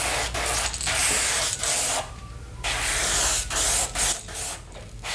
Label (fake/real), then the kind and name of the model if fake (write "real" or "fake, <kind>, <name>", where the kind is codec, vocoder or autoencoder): real